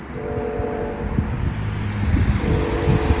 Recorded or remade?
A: recorded